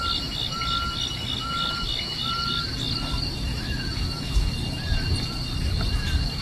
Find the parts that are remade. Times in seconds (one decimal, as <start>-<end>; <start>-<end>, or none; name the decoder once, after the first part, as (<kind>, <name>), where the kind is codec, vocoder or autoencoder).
3.5-4.5 (autoencoder, DAC-VAE)